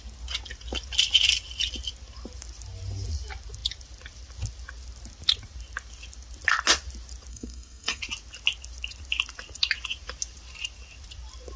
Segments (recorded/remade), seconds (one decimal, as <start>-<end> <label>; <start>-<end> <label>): 0.0-7.3 recorded; 7.3-8.0 remade; 8.0-11.6 recorded

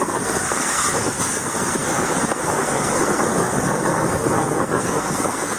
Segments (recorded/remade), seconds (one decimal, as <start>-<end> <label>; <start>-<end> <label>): 0.0-5.6 remade

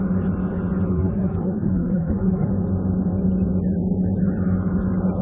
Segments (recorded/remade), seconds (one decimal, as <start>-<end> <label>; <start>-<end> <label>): 0.0-0.9 recorded; 0.9-2.5 remade; 2.5-5.2 recorded

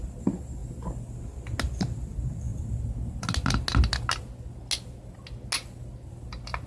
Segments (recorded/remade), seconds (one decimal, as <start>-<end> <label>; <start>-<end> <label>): 0.0-6.7 recorded

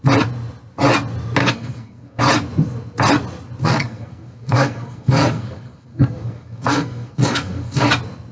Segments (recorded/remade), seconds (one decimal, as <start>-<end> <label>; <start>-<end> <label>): 0.0-1.4 recorded; 1.4-2.2 remade; 2.2-3.6 recorded; 3.6-7.9 remade; 7.9-8.3 recorded

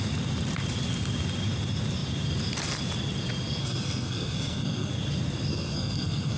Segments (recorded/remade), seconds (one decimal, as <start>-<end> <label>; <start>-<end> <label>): 0.0-3.6 recorded; 3.6-4.9 remade; 4.9-5.5 recorded; 5.5-6.4 remade

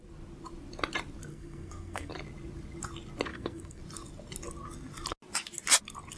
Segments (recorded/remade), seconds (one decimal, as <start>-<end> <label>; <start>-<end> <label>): 0.0-1.3 recorded; 1.3-2.1 remade; 2.1-3.3 recorded; 3.3-3.8 remade; 3.8-6.2 recorded